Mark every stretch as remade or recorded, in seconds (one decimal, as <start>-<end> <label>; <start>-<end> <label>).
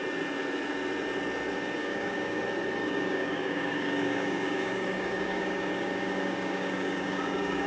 0.0-1.8 recorded; 1.8-2.4 remade; 2.4-2.8 recorded; 2.8-7.7 remade